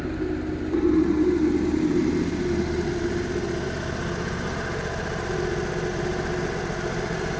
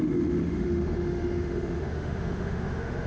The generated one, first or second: second